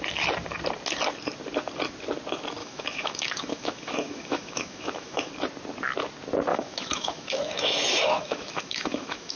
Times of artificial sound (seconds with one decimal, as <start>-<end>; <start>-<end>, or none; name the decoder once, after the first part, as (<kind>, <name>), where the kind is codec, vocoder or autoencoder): 2.6-5.3 (autoencoder, DAC-VAE); 6.5-9.4